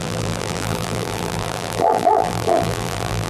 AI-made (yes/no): yes